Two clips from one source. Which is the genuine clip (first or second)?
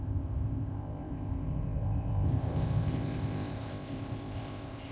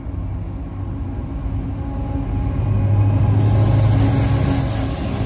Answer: second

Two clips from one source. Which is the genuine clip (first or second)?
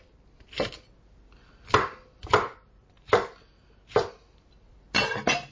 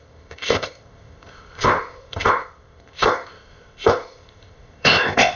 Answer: first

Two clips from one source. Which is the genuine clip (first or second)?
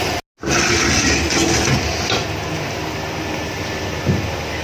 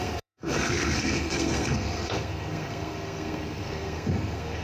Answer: first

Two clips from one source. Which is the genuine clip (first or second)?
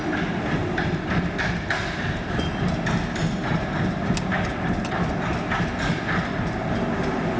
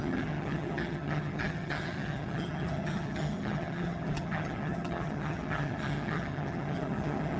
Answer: first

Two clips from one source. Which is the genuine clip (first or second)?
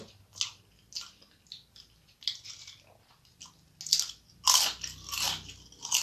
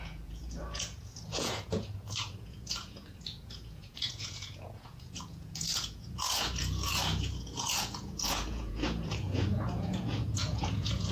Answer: first